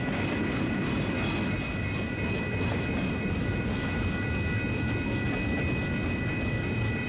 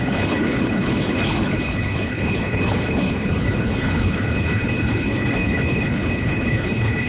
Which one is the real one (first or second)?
first